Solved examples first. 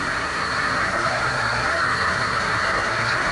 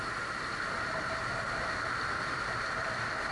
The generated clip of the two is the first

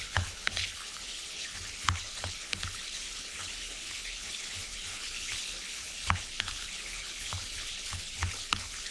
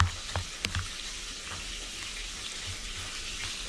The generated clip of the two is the first